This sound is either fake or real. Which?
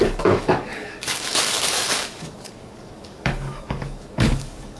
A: fake